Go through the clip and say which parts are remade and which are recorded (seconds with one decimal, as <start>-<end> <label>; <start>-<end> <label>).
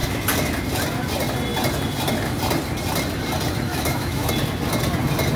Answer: 0.0-3.7 recorded; 3.7-4.3 remade; 4.3-5.4 recorded